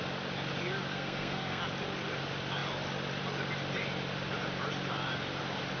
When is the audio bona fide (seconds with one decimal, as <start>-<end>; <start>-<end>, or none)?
0.0-0.9; 1.6-5.8